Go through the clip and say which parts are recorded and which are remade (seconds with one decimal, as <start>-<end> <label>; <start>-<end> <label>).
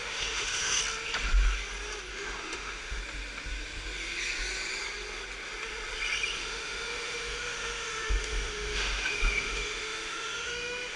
0.0-0.8 remade; 0.8-2.1 recorded; 2.1-3.0 remade; 3.0-6.4 recorded; 6.4-11.0 remade